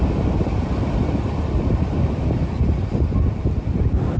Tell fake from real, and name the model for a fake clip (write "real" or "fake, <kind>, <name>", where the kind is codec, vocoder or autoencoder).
fake, vocoder, BigVGAN v2